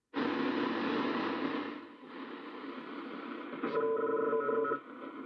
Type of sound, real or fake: real